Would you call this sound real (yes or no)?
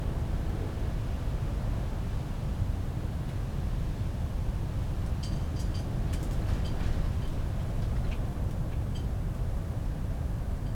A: yes